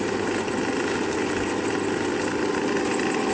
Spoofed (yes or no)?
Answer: no